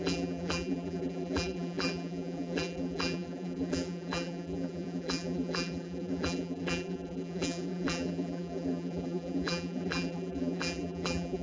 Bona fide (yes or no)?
no